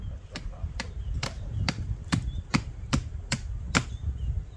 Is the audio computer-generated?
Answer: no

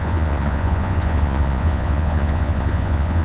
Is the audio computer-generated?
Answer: yes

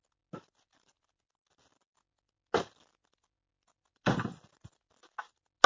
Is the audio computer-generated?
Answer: no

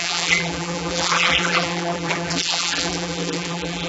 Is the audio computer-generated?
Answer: yes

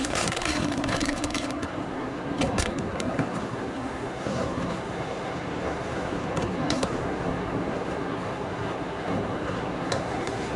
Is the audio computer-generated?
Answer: yes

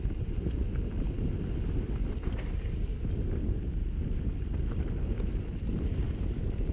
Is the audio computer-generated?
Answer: no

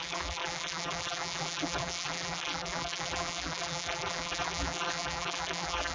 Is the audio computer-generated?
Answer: yes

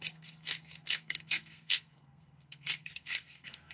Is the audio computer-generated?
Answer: yes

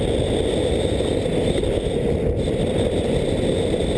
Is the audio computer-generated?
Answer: no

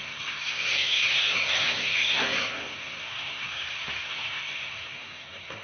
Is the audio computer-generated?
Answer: yes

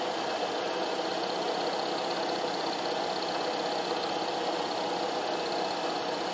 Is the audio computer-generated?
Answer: no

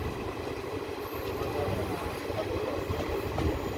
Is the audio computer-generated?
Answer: no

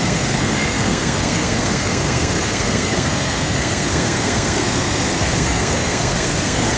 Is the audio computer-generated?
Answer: yes